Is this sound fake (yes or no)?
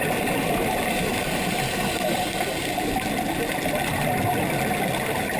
no